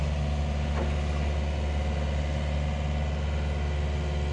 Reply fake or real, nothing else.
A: real